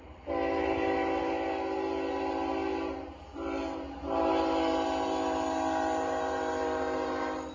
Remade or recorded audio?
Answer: recorded